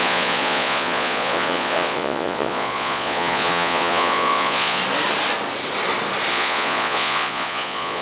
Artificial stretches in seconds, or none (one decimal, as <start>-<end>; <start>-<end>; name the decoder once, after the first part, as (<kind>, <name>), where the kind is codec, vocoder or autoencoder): 0.0-4.8 (vocoder, Vocos); 6.3-8.0